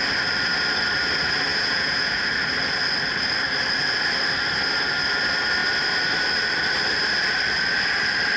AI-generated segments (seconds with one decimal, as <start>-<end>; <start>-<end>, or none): 1.5-2.2